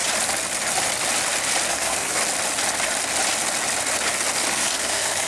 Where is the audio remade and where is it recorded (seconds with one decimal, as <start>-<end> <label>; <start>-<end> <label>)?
0.0-1.7 recorded; 1.7-2.2 remade; 2.2-4.5 recorded; 4.5-5.3 remade